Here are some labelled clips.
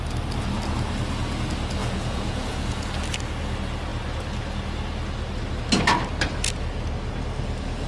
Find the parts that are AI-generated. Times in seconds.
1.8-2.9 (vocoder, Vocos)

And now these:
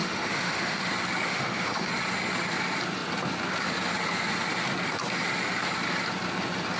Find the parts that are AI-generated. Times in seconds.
0.0-0.9 (autoencoder, DAC-VAE); 1.3-1.9

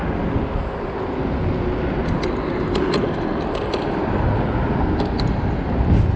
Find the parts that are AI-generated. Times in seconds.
none

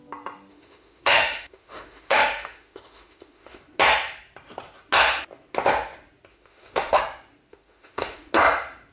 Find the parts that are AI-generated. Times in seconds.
0.5-3.6 (autoencoder, DAC-VAE); 6.3-7.0; 7.5-8.3

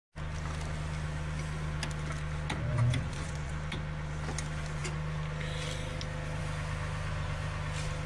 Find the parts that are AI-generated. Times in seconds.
2.7-3.5 (vocoder, Vocos)

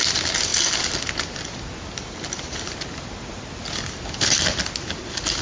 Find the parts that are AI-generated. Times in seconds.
none

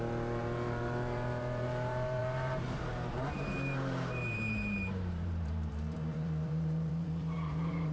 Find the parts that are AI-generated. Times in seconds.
0.0-7.9 (vocoder, BigVGAN v2)

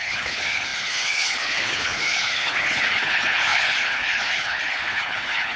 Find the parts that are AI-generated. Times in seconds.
0.0-5.6 (codec, HILCodec)